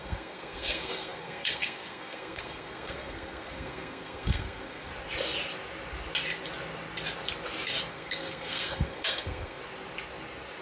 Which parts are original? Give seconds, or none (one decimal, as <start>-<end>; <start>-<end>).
4.9-7.9; 9.6-10.6